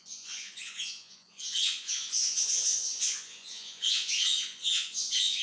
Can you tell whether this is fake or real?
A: fake